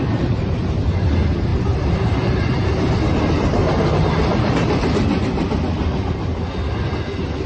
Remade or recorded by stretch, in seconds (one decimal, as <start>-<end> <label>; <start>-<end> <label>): 0.0-1.0 remade; 1.0-1.5 recorded; 1.5-2.8 remade; 2.8-3.6 recorded; 3.6-4.5 remade; 4.5-7.5 recorded